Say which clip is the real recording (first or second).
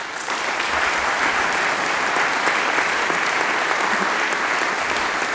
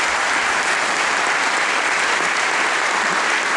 first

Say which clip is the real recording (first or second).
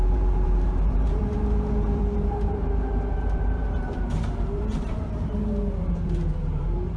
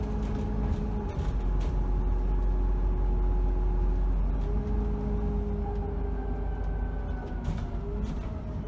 second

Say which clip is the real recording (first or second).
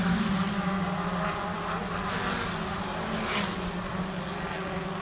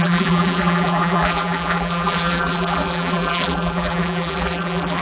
first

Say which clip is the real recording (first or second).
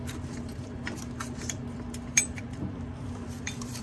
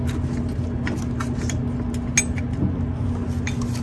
second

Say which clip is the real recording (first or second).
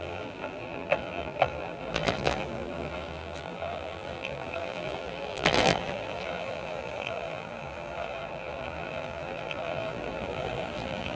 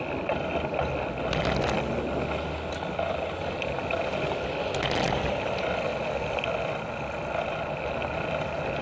second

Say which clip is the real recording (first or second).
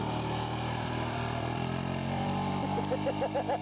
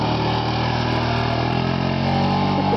second